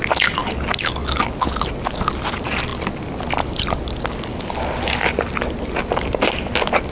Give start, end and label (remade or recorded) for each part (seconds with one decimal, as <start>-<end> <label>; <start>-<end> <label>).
0.0-6.9 recorded